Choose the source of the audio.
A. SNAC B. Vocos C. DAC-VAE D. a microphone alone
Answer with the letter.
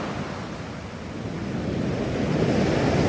D